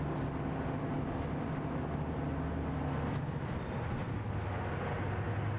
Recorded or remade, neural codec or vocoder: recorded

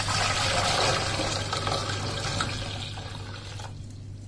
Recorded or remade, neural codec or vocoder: recorded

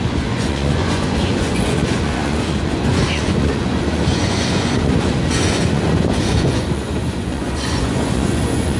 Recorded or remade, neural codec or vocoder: remade, vocoder, Vocos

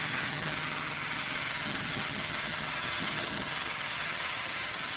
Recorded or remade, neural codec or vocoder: remade, vocoder, HiFi-GAN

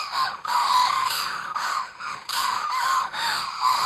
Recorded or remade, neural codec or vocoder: remade, autoencoder, DAC-VAE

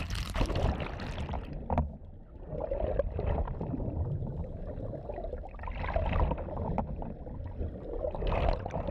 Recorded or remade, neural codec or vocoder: recorded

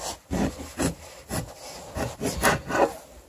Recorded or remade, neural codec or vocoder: recorded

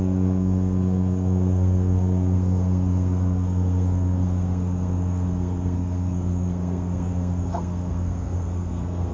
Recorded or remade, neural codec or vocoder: remade, codec, SNAC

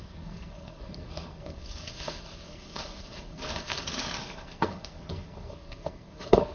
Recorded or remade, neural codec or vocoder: remade, codec, SNAC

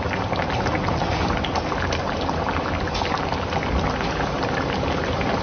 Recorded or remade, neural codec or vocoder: recorded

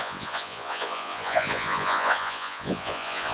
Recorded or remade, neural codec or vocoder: remade, vocoder, Vocos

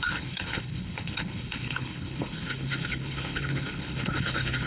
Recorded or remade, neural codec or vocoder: remade, codec, HILCodec